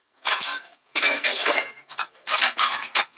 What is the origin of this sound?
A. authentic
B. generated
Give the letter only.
B